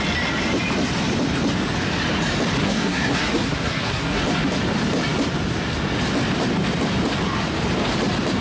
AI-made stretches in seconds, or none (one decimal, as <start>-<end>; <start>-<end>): 2.6-4.2